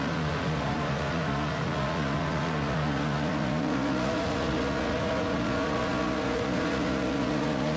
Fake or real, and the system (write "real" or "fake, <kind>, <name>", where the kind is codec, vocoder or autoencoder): fake, vocoder, Vocos